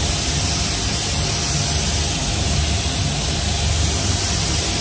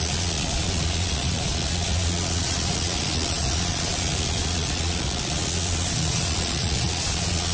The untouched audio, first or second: first